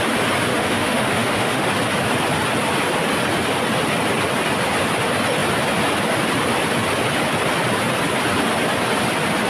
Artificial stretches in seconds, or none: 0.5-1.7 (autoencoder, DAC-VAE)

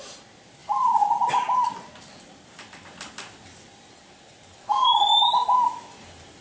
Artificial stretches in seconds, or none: 5.1-5.9 (autoencoder, DAC-VAE)

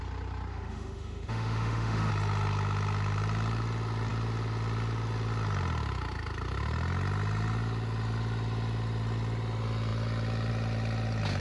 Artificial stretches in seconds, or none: 0.5-2.1 (autoencoder, DAC-VAE)

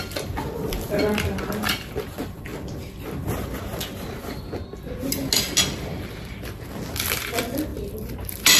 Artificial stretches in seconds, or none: none

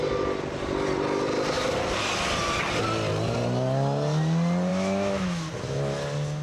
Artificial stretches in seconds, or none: 4.7-5.5 (autoencoder, DAC-VAE)

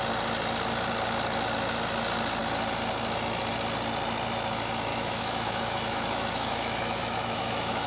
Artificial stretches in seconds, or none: 4.9-7.9 (autoencoder, DAC-VAE)

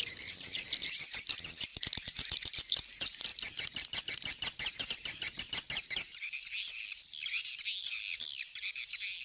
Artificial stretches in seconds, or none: none

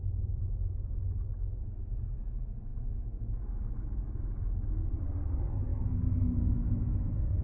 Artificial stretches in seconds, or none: 2.7-3.4 (autoencoder, DAC-VAE); 5.7-6.4